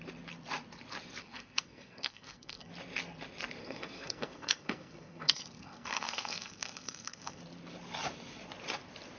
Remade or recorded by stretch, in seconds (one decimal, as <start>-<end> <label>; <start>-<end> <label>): 0.0-1.2 recorded; 1.2-2.7 remade; 2.7-3.6 recorded; 3.6-7.4 remade; 7.4-9.2 recorded